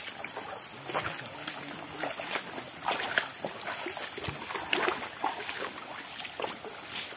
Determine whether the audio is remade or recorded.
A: recorded